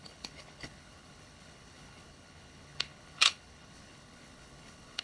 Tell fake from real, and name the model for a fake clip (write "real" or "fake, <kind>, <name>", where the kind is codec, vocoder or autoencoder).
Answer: fake, codec, HILCodec